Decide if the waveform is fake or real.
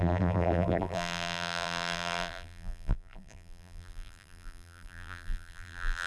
fake